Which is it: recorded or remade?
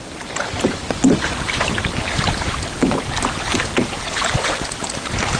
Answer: recorded